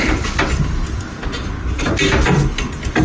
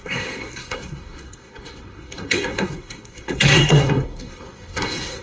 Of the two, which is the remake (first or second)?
second